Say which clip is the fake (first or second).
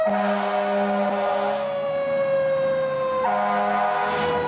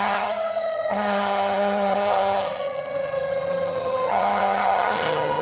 second